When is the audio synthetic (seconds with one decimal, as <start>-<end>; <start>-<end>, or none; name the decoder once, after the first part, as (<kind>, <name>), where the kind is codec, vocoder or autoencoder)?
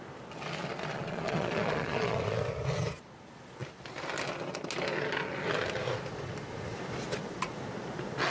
0.9-2.4 (vocoder, Vocos)